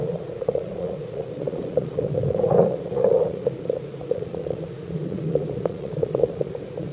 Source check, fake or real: fake